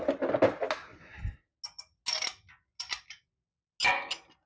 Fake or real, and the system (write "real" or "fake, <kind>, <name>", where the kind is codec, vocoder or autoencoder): real